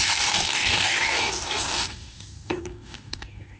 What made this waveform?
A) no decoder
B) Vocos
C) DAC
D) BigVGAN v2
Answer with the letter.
C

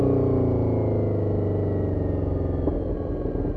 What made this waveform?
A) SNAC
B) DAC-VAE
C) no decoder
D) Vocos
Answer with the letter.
C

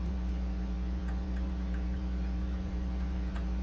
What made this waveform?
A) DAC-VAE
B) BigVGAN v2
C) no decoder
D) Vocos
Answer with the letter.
D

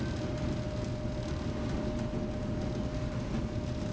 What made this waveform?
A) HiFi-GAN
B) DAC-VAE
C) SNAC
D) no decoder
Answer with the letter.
D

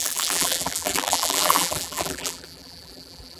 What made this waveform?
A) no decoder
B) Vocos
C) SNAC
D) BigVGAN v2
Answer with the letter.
D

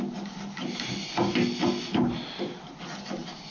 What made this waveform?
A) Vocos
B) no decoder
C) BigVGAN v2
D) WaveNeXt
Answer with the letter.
B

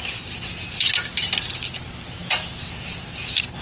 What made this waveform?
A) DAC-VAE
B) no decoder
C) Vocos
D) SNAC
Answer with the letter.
B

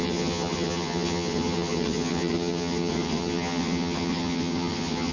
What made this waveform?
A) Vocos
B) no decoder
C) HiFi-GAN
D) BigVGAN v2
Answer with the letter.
C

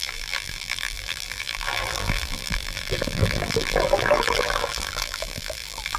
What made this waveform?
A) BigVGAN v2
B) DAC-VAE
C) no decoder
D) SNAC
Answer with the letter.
A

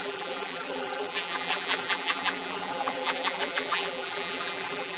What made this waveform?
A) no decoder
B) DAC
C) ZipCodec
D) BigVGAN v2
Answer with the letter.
D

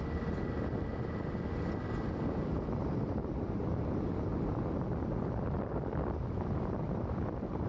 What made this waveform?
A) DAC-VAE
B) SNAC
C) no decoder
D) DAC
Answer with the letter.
C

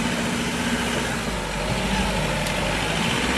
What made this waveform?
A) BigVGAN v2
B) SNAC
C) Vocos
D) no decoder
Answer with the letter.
D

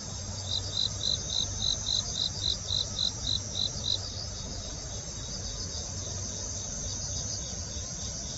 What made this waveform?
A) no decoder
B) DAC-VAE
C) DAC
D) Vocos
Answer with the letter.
A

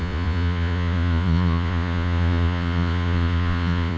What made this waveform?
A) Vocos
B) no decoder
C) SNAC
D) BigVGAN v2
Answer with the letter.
A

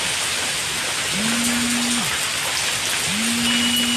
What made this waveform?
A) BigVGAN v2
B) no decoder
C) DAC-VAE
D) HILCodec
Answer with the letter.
B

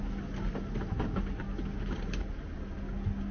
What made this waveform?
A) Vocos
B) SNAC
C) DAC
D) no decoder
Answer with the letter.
D